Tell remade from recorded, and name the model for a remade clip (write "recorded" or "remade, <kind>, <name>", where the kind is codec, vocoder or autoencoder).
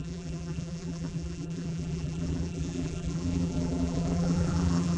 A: remade, vocoder, BigVGAN v2